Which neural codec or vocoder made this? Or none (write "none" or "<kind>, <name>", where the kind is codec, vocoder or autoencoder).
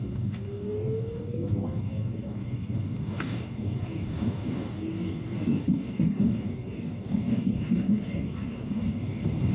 codec, DAC